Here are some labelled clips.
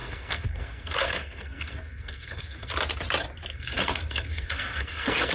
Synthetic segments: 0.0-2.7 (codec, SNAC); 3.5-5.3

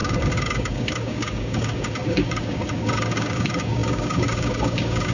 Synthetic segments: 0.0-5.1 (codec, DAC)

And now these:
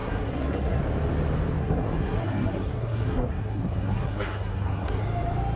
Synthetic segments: 0.0-0.8 (codec, SNAC); 1.6-5.0